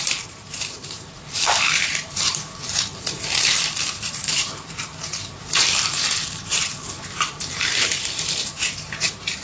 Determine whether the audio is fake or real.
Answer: fake